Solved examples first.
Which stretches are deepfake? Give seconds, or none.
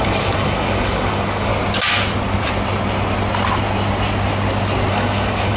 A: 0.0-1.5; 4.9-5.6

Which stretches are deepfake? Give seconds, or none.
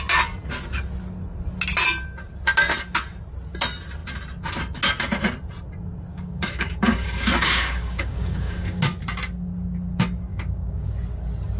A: 6.1-8.8; 10.3-10.9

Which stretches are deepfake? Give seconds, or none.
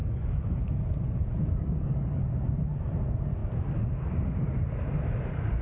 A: 0.0-0.6; 1.4-2.2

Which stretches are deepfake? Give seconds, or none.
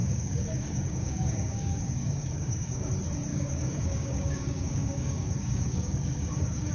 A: 0.0-2.9; 3.3-6.7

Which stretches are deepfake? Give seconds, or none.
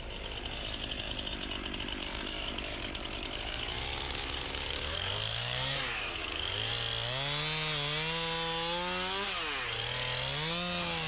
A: 2.1-6.7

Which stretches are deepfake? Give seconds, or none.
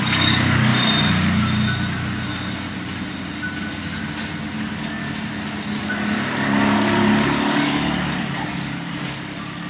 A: 0.0-0.7; 4.6-5.0; 5.8-9.7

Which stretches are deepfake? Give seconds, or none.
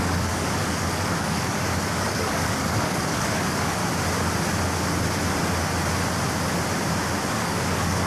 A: 0.0-3.8; 7.3-8.1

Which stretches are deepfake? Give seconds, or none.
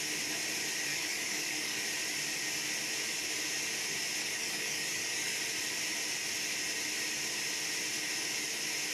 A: 0.9-1.8; 4.2-5.4